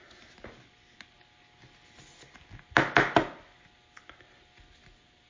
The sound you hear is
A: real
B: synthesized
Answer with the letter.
A